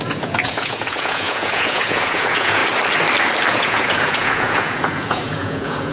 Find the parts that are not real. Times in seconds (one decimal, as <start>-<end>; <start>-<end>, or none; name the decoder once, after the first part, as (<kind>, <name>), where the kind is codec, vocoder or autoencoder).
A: 0.0-2.6 (vocoder, Vocos); 3.5-5.9